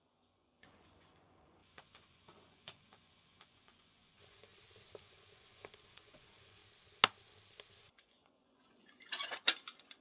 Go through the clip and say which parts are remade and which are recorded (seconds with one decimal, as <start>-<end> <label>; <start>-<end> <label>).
0.0-4.5 remade; 4.5-5.0 recorded; 5.0-6.6 remade; 6.6-7.8 recorded; 7.8-10.0 remade